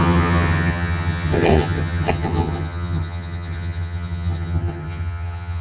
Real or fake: fake